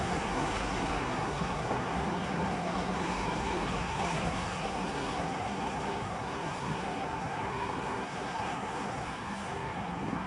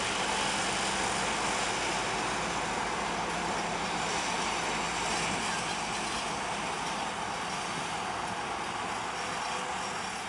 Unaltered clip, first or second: second